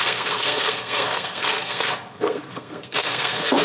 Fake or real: fake